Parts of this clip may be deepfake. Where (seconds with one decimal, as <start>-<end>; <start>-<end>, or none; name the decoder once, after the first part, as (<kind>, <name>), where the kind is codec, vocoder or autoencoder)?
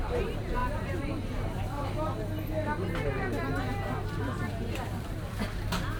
0.0-0.6 (vocoder, BigVGAN v2); 4.2-6.0